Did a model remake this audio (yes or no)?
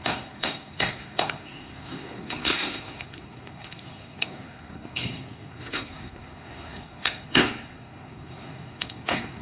yes